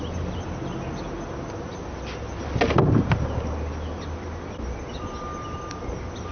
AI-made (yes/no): no